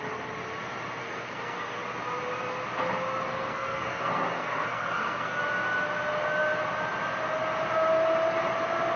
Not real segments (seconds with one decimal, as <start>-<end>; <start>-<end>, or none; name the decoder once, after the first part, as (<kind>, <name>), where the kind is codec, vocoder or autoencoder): 1.0-1.8 (codec, SNAC); 3.3-5.4